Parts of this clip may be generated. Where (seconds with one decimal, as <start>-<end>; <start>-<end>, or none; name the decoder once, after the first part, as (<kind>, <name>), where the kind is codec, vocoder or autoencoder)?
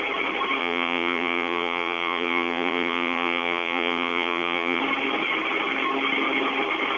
0.6-4.8 (vocoder, BigVGAN v2)